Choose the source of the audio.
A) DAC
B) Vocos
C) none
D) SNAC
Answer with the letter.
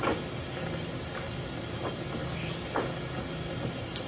C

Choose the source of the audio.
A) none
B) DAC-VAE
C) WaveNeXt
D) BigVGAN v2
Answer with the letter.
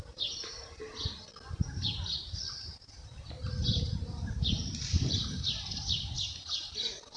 D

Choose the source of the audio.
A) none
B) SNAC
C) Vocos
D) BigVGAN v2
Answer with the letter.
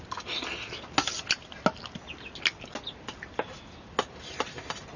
A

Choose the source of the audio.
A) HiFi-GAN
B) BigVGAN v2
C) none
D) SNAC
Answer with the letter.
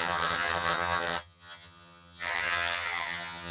A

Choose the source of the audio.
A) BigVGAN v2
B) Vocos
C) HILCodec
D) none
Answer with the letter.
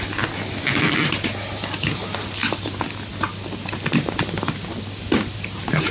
D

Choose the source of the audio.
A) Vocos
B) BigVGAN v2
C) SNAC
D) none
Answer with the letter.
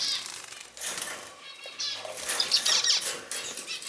D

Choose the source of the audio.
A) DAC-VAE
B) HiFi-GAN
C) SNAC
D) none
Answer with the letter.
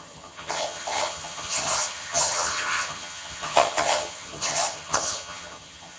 B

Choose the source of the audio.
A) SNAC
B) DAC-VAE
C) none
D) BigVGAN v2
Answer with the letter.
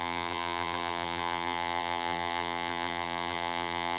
D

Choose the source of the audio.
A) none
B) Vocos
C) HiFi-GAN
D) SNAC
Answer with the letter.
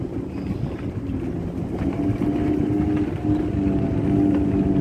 A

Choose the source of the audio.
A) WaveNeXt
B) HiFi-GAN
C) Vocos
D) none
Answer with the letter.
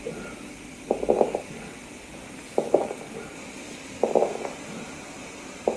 D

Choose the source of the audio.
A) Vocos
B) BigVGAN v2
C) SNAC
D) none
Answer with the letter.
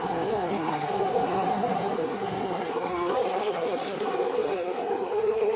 C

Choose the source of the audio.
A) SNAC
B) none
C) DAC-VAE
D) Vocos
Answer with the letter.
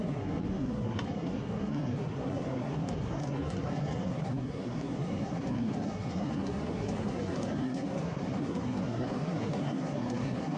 A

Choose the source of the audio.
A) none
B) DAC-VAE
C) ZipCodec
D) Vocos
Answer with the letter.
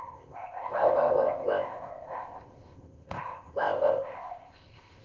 C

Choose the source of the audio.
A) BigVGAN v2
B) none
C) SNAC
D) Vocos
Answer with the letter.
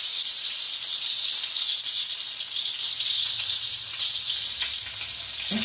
B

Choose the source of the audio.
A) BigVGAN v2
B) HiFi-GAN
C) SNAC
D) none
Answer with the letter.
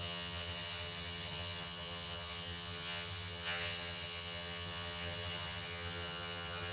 B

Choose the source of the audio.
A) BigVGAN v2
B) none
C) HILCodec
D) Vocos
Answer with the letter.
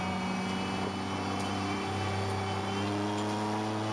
B